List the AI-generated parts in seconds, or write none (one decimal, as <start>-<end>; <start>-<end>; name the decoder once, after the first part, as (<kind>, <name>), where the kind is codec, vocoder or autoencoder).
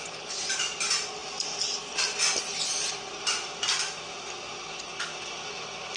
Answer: none